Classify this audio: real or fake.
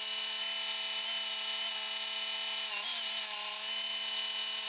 real